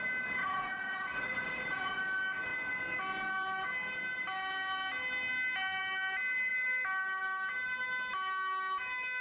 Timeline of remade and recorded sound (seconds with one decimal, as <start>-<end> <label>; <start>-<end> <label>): 0.0-0.4 recorded; 0.4-2.0 remade; 2.0-9.2 recorded